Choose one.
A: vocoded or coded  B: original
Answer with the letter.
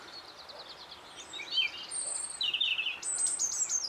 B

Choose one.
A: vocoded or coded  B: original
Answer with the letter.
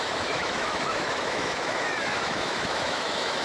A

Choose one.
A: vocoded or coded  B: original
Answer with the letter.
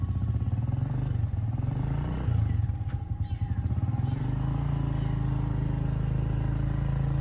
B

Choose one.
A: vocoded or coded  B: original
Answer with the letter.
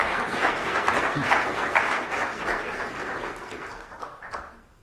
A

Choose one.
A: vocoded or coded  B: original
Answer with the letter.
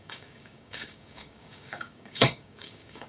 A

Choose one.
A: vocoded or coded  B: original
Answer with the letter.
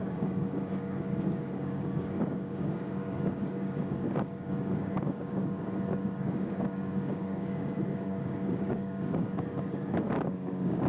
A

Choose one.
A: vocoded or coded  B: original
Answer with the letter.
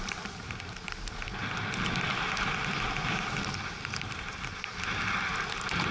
B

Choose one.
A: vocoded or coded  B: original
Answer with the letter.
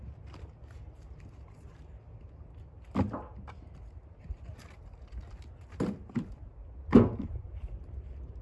B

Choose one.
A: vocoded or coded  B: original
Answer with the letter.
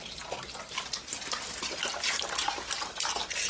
B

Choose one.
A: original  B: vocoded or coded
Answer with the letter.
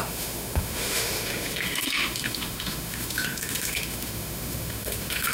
B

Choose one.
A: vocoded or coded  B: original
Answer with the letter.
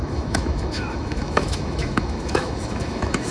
A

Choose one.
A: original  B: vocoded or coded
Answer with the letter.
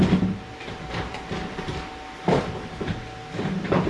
A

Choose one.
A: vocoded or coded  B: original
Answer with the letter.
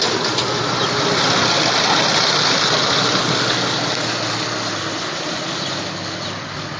B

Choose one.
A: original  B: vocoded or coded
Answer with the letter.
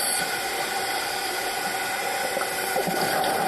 A